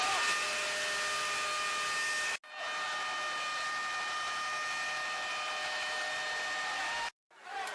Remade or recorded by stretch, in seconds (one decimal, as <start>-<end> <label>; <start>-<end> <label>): 0.0-5.6 recorded; 5.6-6.1 remade; 6.1-7.7 recorded